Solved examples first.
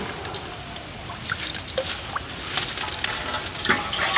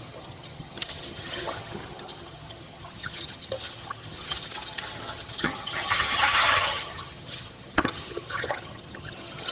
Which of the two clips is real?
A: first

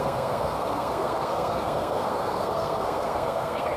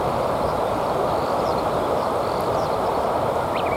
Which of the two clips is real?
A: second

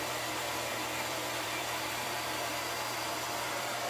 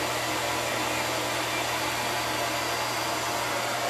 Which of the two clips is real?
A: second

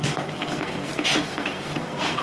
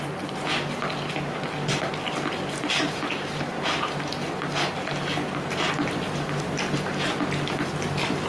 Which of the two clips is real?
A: second